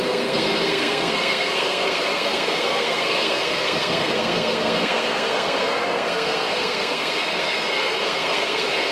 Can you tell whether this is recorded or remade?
remade